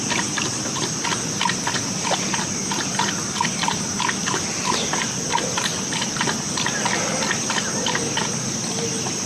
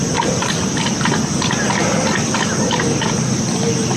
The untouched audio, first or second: second